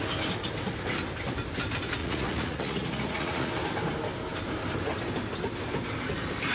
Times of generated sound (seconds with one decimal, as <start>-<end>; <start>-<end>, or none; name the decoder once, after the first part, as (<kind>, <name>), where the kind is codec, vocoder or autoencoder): 2.0-3.5 (vocoder, Vocos)